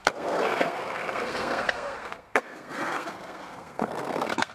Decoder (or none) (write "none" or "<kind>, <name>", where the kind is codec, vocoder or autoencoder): codec, SNAC